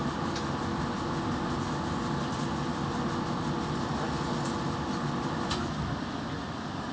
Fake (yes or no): no